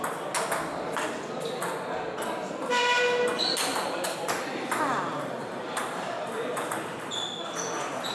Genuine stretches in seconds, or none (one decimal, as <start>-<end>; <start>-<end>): 0.0-3.7; 7.1-8.1